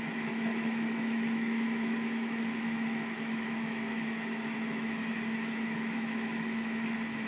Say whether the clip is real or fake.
fake